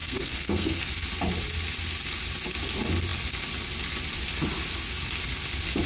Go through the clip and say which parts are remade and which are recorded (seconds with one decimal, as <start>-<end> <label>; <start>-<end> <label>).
0.0-0.8 remade; 0.8-5.9 recorded